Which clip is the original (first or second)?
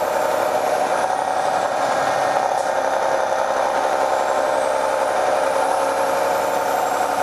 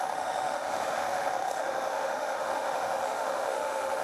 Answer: first